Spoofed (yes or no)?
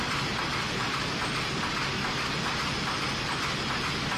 no